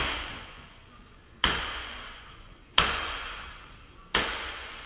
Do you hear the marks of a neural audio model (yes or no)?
yes